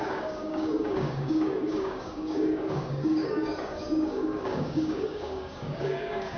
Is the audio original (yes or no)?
no